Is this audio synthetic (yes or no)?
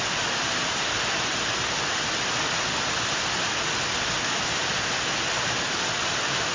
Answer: no